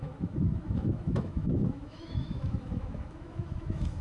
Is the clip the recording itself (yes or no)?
no